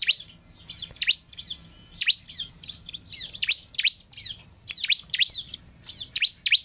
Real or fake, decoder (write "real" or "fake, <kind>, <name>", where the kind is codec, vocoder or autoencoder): real